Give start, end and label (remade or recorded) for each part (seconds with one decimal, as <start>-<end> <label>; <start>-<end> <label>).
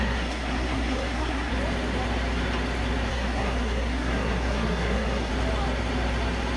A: 0.0-1.5 remade; 1.5-3.1 recorded; 3.1-5.3 remade; 5.3-6.6 recorded